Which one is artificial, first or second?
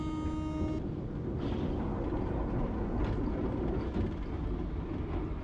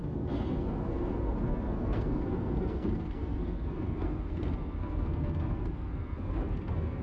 second